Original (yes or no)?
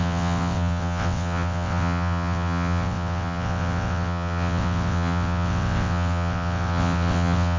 no